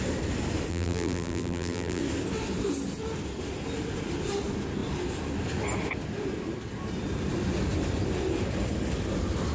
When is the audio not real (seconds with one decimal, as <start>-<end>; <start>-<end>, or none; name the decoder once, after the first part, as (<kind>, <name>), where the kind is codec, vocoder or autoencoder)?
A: 0.7-2.0 (vocoder, BigVGAN v2)